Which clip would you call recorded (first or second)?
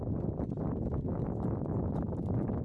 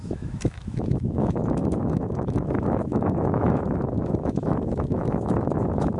first